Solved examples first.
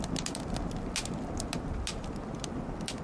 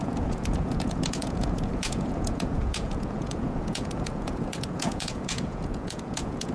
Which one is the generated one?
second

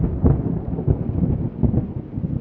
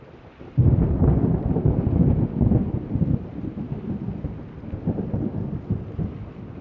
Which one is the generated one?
second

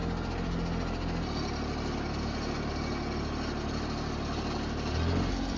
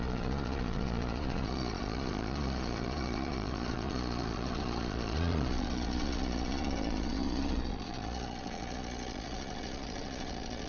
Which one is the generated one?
second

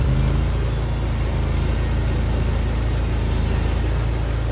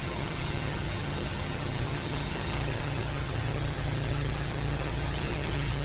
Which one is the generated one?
second